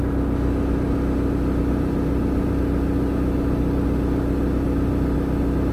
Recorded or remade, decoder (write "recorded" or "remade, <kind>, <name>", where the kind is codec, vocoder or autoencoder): recorded